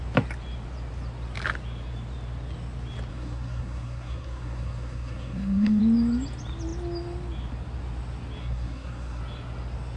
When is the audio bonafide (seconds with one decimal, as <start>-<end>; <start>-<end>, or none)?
0.0-3.1; 5.8-8.4; 9.2-10.0